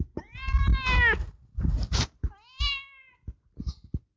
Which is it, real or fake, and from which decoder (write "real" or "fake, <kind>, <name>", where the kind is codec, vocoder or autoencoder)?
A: real